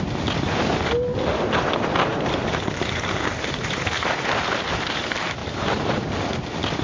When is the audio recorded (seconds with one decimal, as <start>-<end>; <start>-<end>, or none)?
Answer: 0.0-2.1; 5.0-5.4; 6.1-6.8